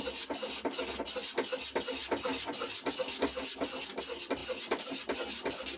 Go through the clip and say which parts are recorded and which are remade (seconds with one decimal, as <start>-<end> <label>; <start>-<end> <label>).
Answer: 0.0-2.0 recorded; 2.0-4.0 remade; 4.0-5.8 recorded